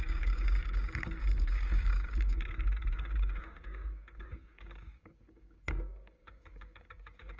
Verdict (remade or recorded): remade